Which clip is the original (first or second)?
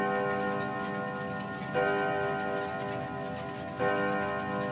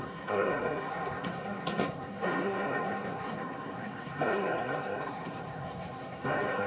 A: first